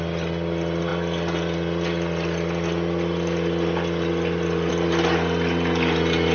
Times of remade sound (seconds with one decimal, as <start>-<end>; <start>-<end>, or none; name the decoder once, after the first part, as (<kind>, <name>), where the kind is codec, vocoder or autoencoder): none